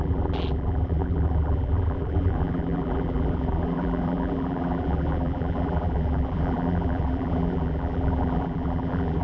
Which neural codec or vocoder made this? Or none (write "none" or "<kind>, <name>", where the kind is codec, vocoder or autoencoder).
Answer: vocoder, BigVGAN v2